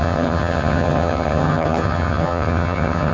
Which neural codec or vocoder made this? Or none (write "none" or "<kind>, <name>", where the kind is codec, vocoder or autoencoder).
vocoder, HiFi-GAN